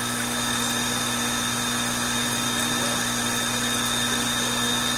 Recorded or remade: recorded